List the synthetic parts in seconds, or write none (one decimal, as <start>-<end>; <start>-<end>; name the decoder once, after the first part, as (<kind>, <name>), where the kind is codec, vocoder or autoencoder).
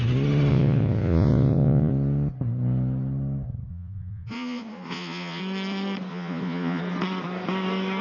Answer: 0.5-1.9 (vocoder, Vocos); 3.7-5.4; 6.1-6.8